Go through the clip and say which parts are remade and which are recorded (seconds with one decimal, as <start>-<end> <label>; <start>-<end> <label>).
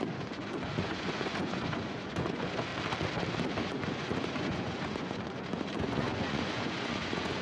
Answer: 0.0-2.7 remade; 2.7-3.6 recorded; 3.6-7.4 remade